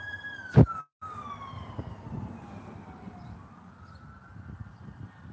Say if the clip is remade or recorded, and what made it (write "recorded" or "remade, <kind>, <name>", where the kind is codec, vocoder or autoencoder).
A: remade, vocoder, BigVGAN v2